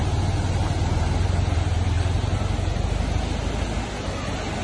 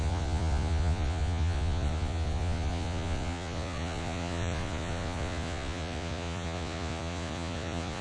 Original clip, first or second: first